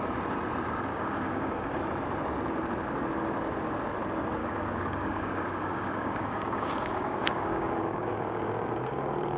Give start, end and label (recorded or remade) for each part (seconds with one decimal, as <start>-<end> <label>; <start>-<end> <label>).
0.0-0.9 recorded; 0.9-1.8 remade; 1.8-4.4 recorded; 4.4-9.4 remade